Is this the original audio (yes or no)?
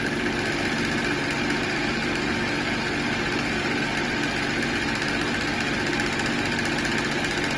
yes